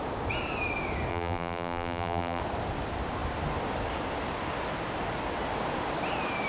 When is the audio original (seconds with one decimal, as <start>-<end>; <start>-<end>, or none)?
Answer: 0.0-1.1; 2.4-6.5